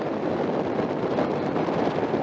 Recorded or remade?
recorded